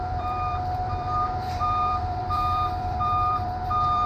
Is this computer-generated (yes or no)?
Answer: yes